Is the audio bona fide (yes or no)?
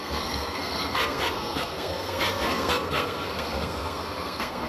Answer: no